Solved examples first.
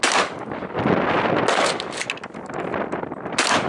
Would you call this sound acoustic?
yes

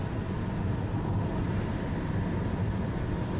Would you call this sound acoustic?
yes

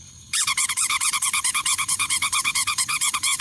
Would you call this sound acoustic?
no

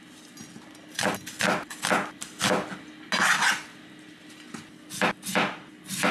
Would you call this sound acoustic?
yes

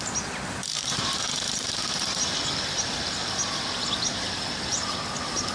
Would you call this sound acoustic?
yes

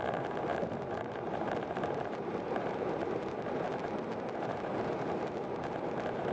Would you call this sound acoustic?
no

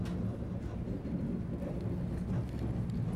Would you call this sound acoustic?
yes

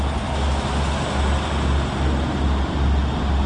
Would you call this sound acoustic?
yes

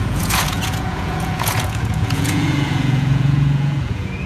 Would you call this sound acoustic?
no